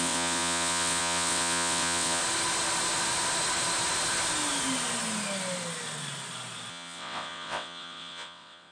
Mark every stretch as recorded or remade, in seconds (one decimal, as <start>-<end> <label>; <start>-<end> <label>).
0.0-2.2 remade; 2.2-6.7 recorded; 6.7-8.7 remade